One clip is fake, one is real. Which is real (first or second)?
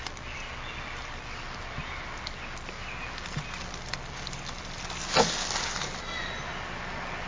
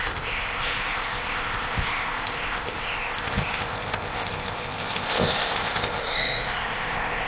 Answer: first